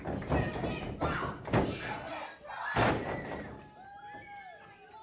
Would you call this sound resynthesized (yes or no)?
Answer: no